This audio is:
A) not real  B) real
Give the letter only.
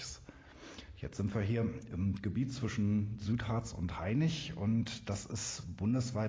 B